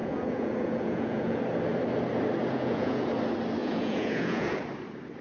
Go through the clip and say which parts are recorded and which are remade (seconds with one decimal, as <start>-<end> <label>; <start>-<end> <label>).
0.0-1.4 remade; 1.4-2.4 recorded; 2.4-3.1 remade; 3.1-3.6 recorded; 3.6-4.6 remade; 4.6-5.2 recorded